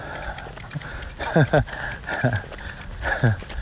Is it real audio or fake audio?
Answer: real